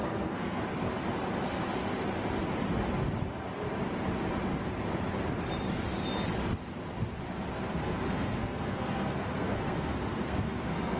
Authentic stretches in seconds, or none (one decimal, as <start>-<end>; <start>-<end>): 0.6-7.7